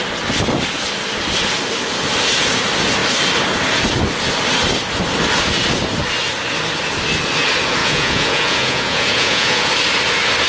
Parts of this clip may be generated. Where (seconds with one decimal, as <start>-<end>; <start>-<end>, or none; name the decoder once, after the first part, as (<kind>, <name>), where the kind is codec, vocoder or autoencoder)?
7.8-9.7 (vocoder, Vocos)